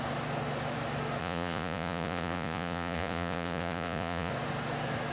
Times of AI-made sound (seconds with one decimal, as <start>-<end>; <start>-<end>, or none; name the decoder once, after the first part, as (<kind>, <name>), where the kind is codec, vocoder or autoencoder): 1.2-4.3 (vocoder, Vocos)